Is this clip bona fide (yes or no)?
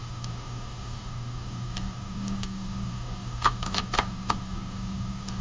no